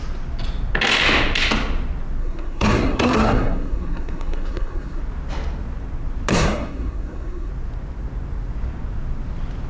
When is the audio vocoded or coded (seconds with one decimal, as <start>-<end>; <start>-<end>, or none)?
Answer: 2.2-5.0; 6.3-7.5